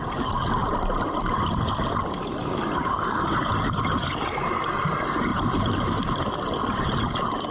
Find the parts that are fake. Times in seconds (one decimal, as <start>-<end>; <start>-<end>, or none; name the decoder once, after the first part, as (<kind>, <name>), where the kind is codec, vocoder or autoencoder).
none